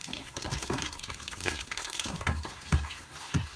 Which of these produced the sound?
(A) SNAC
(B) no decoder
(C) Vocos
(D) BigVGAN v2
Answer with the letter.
A